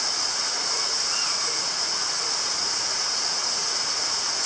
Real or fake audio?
fake